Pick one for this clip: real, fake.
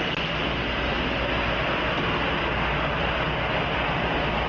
real